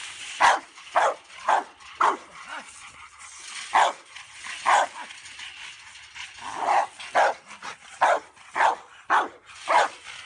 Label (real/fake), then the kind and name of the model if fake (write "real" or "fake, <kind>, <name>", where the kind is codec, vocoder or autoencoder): real